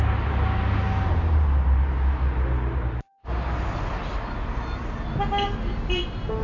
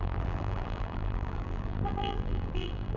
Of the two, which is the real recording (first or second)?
first